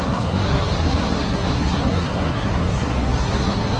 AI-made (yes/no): yes